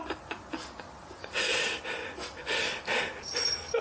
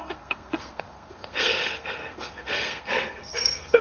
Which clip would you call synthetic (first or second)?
second